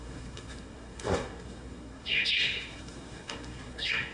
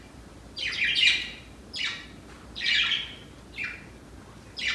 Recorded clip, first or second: second